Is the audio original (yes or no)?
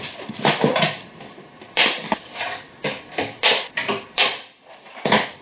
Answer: no